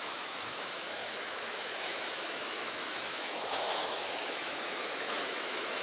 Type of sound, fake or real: fake